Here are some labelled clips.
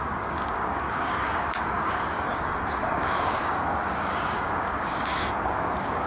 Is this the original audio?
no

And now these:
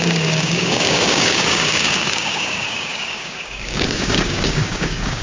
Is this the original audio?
no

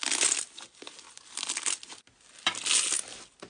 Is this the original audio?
yes